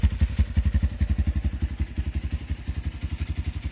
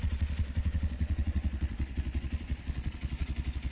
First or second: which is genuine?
first